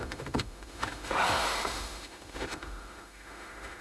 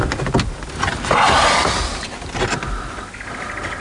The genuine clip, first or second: second